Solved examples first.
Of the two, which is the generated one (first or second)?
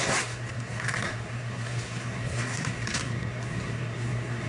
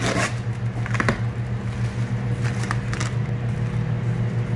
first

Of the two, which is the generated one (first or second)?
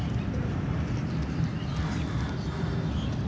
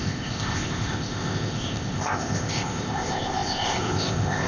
second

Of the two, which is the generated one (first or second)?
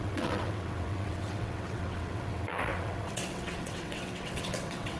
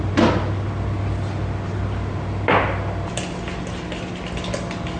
first